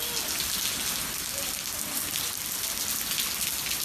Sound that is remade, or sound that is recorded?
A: recorded